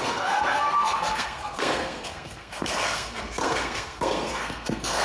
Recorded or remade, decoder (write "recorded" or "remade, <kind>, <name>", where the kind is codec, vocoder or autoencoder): remade, codec, SNAC